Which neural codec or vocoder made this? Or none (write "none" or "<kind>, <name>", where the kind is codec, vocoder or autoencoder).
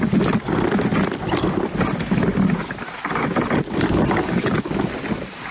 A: none